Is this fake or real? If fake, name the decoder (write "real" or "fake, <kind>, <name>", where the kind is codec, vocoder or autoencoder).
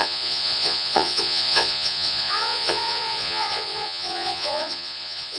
fake, vocoder, Vocos